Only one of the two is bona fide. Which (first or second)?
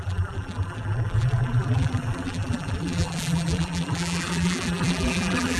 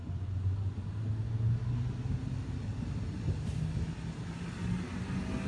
second